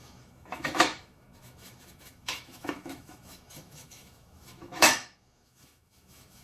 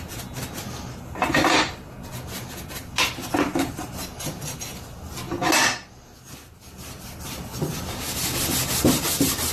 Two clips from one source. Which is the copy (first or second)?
first